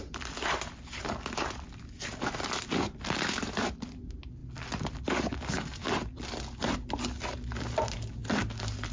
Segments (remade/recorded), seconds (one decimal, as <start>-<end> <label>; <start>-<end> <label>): 0.0-8.9 recorded